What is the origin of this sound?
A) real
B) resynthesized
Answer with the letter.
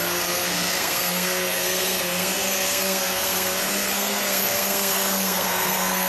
B